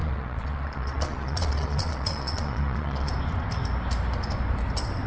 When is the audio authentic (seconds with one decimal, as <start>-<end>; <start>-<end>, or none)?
3.1-5.1